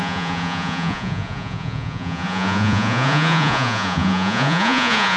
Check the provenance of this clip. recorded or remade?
remade